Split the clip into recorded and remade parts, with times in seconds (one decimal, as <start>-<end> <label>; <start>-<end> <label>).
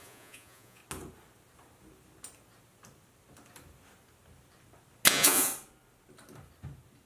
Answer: 0.0-0.8 remade; 0.8-5.1 recorded; 5.1-5.5 remade; 5.5-7.1 recorded